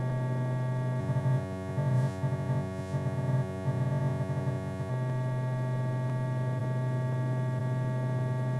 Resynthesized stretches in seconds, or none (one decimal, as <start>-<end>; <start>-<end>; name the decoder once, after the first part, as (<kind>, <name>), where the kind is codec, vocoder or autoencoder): 1.0-4.9 (vocoder, Vocos)